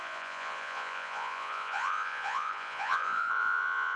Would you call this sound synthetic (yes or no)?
yes